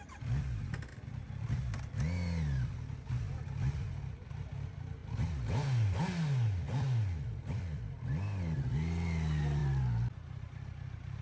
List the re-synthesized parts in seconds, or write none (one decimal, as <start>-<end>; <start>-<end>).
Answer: none